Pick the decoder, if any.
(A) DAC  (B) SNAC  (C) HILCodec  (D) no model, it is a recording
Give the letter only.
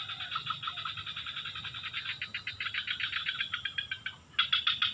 D